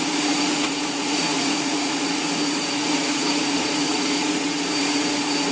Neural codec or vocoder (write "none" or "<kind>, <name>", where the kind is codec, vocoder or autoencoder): vocoder, Vocos